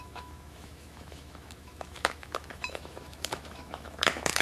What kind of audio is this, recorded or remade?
remade